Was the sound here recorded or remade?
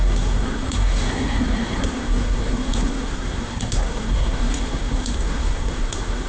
remade